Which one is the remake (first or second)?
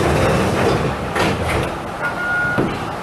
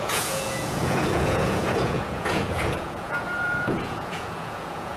second